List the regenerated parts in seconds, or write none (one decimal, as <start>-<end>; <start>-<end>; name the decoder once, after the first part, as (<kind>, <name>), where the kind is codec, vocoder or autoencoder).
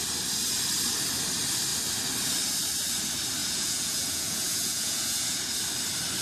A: 3.4-5.5 (vocoder, Vocos)